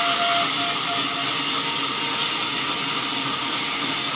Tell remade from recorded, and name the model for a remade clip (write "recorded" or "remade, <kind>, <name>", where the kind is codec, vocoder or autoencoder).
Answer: recorded